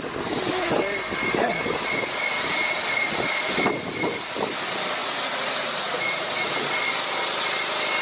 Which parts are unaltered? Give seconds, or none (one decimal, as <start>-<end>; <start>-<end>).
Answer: 0.0-5.0; 6.7-8.0